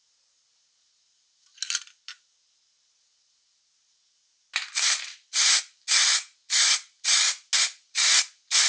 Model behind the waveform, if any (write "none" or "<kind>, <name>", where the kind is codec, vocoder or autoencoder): none